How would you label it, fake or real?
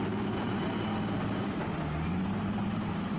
real